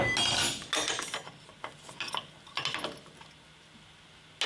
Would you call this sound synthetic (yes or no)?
no